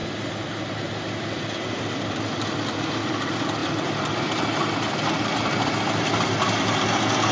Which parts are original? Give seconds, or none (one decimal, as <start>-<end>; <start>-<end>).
0.0-7.3